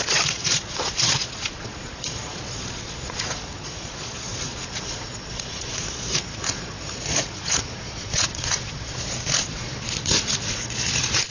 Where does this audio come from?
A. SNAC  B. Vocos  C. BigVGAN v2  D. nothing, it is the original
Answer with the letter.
B